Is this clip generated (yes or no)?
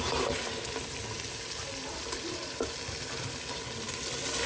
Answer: no